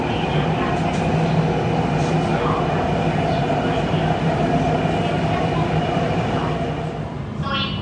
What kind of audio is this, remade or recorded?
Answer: recorded